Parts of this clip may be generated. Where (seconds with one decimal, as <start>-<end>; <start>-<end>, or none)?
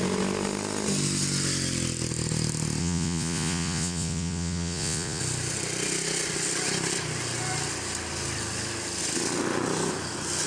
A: 2.8-5.2